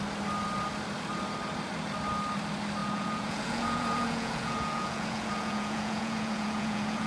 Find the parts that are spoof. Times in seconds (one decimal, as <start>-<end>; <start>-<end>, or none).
2.8-7.1

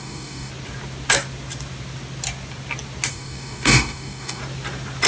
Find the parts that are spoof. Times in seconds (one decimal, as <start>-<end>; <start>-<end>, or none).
0.0-0.5; 3.1-4.4

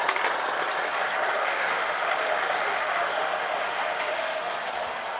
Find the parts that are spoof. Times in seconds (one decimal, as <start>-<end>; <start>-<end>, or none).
1.4-4.5

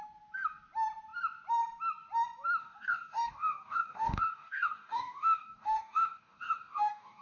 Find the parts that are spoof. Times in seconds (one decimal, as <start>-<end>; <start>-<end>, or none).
2.6-7.2

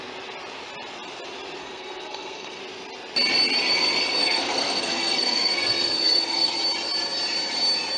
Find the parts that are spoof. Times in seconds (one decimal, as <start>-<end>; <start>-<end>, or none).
1.6-2.6; 4.2-6.5

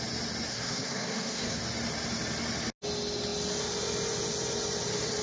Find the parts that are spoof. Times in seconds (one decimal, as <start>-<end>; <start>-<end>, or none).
0.5-1.6

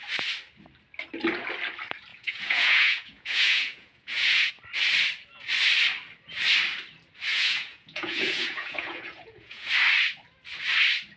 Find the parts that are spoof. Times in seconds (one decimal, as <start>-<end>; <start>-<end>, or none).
2.1-4.5; 7.3-9.7